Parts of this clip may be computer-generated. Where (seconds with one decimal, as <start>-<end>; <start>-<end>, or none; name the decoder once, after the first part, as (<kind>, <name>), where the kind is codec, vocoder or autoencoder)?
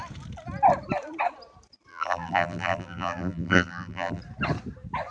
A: 1.9-4.2 (vocoder, BigVGAN v2)